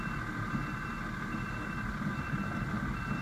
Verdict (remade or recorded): recorded